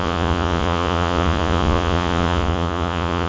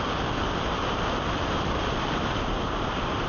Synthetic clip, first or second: first